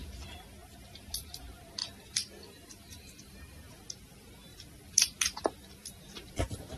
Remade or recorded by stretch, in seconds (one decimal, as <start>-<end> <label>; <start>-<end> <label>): 0.0-1.8 recorded; 1.8-3.8 remade; 3.8-4.5 recorded; 4.5-6.8 remade